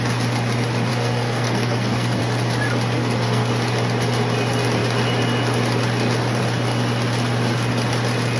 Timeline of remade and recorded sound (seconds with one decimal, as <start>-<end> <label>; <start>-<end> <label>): 0.0-0.9 recorded; 0.9-2.2 remade; 2.2-3.0 recorded; 3.0-3.5 remade; 3.5-8.4 recorded